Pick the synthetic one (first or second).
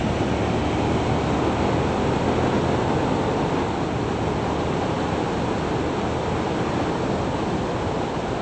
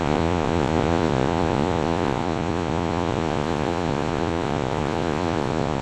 second